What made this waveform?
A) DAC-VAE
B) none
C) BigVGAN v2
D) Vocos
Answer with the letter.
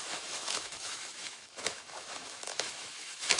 A